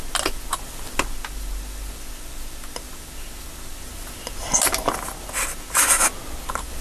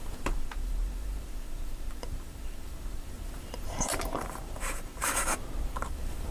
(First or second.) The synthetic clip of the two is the second